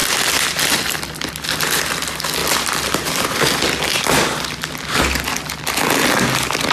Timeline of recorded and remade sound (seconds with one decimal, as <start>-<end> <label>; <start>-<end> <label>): 0.0-6.7 recorded